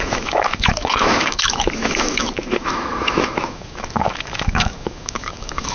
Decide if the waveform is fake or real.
fake